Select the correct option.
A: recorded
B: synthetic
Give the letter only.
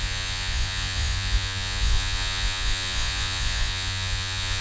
B